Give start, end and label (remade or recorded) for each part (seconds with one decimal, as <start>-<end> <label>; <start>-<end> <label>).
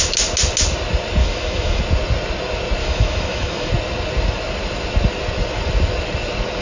0.0-1.2 recorded; 1.2-1.8 remade; 1.8-2.8 recorded; 2.8-3.7 remade; 3.7-6.6 recorded